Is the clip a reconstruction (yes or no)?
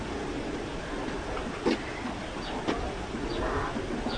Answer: no